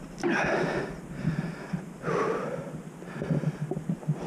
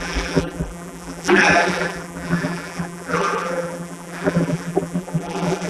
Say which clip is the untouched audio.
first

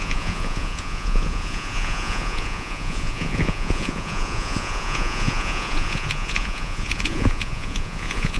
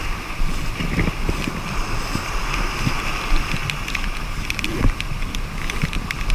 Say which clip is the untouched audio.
second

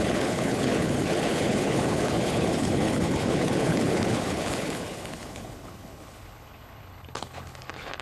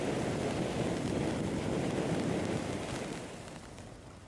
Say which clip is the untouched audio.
second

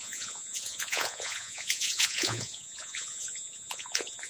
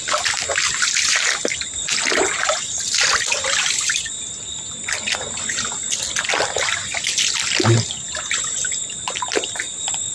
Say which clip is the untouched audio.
second